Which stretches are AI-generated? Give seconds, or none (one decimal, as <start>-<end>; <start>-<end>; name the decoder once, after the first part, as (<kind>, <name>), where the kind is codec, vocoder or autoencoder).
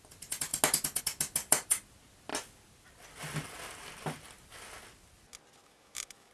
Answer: 5.6-6.3 (autoencoder, DAC-VAE)